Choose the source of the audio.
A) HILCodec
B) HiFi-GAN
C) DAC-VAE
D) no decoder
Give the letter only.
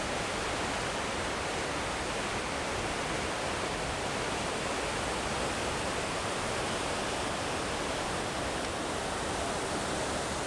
D